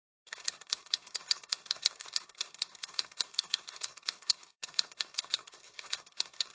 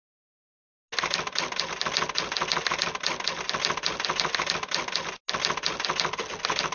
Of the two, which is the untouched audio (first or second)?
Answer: second